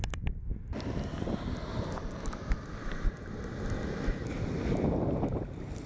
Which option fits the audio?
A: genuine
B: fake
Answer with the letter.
A